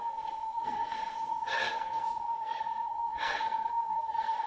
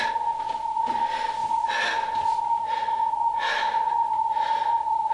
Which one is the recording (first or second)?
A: second